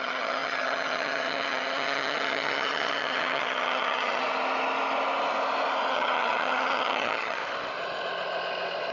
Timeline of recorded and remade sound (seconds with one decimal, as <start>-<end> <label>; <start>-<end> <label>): 0.0-4.2 remade; 4.2-5.9 recorded; 5.9-7.4 remade; 7.4-8.9 recorded